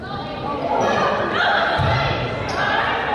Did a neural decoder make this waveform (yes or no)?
no